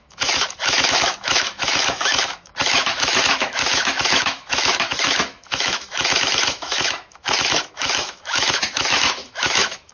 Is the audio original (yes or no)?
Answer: no